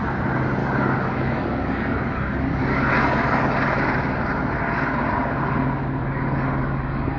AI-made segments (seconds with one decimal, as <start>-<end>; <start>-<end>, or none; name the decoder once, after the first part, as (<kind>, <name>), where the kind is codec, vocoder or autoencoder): 0.6-3.5 (codec, DAC); 6.0-7.2